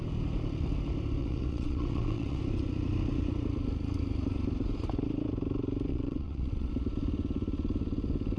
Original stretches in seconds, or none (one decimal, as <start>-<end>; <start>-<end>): 0.0-1.2; 2.4-5.9; 6.7-8.4